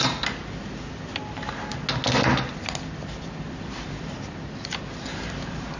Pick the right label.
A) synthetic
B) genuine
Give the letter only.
B